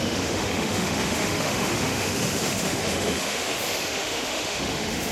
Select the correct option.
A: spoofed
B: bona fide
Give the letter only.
A